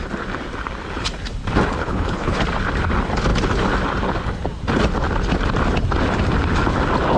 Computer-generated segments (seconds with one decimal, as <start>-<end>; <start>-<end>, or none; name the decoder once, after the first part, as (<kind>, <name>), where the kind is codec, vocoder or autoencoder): 1.8-2.4 (codec, HILCodec)